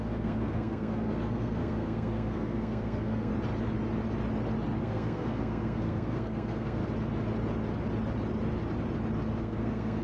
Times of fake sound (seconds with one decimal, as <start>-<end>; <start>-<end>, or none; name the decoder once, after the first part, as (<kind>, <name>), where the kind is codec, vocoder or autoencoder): 0.0-3.3 (codec, SNAC); 4.8-6.8; 9.4-10.0